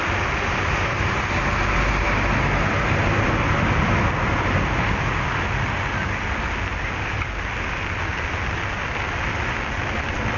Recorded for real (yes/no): yes